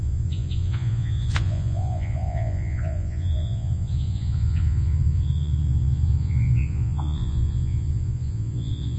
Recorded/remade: remade